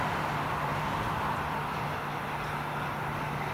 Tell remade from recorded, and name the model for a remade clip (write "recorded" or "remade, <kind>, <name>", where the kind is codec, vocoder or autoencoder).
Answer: recorded